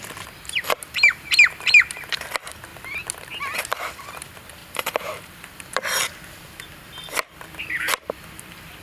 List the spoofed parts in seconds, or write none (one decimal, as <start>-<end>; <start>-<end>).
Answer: 0.0-2.7; 3.4-8.8